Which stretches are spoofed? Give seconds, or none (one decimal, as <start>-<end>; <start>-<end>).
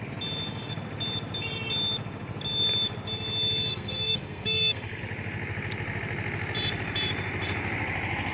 3.7-5.0